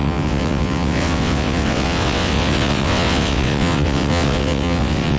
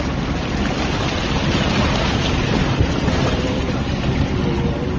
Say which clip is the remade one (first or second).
first